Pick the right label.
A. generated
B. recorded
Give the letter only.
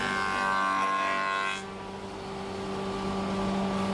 B